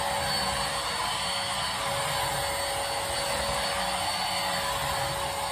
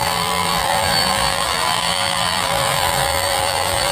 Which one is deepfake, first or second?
second